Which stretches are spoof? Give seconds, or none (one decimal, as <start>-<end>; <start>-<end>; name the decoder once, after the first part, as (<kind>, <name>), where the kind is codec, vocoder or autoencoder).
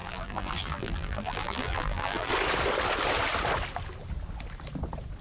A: 0.0-2.3 (vocoder, BigVGAN v2)